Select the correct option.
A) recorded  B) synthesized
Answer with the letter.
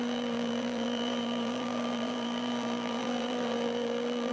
B